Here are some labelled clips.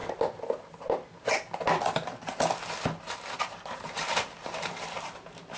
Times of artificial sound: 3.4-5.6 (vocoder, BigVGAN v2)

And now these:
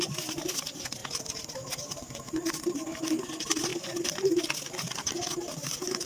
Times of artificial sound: none

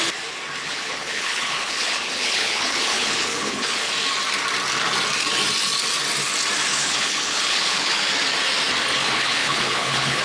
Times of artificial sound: 0.6-3.9 (codec, HILCodec); 6.7-8.0; 9.0-10.2

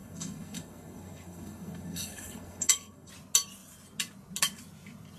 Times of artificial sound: 0.0-3.1 (codec, SNAC)

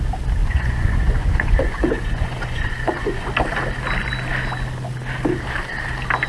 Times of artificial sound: 0.4-3.3 (vocoder, Vocos)

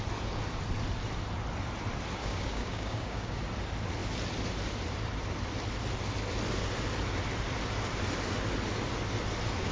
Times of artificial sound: 2.2-3.4 (codec, DAC)